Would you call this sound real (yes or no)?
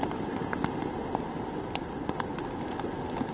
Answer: yes